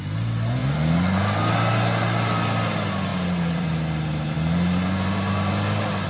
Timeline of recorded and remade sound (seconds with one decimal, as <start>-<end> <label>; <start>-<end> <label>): 0.0-0.6 recorded; 0.6-1.5 remade; 1.5-3.1 recorded; 3.1-5.5 remade; 5.5-6.1 recorded